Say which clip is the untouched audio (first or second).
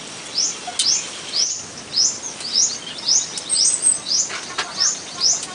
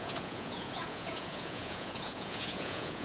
first